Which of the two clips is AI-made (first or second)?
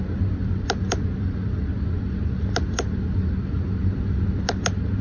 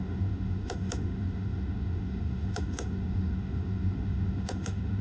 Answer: second